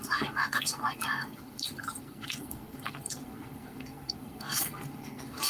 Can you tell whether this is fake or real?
fake